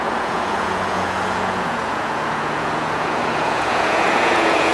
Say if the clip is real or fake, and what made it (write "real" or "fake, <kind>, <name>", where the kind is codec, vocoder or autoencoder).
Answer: fake, vocoder, Vocos